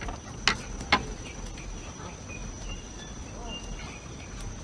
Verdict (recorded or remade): recorded